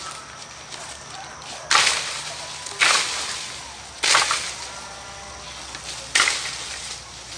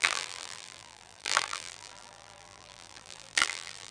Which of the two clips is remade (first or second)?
second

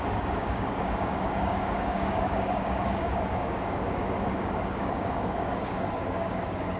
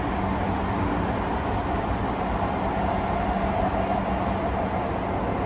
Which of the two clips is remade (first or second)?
first